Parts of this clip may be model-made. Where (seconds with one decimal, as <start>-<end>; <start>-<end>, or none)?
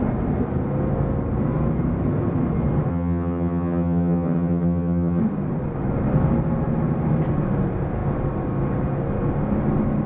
2.9-5.2